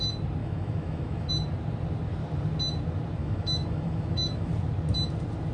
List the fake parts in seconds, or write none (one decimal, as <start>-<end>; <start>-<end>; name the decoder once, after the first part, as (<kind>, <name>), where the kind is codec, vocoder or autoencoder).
0.4-1.3 (autoencoder, DAC-VAE); 3.2-4.5